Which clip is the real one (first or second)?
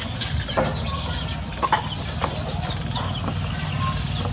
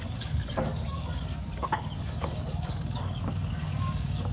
first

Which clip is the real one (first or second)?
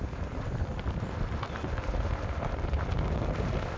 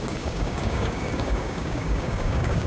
first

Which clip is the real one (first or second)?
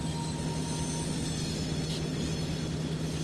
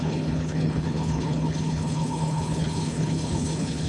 first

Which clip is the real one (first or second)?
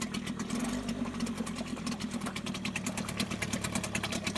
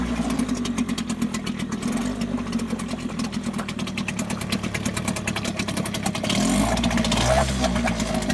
second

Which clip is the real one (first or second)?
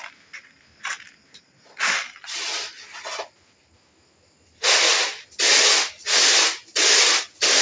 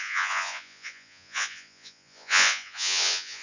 first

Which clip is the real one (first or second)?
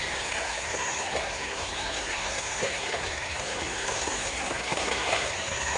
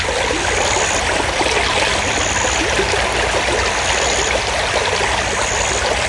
second